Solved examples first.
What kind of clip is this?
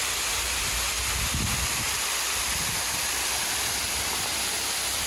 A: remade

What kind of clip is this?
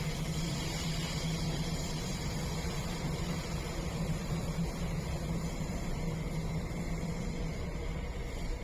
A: remade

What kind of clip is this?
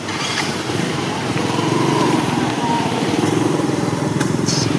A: remade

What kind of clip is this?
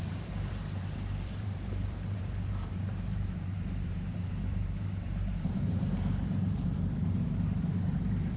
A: remade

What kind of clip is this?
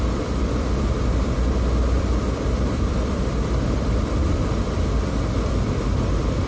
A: remade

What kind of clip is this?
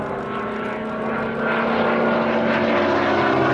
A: recorded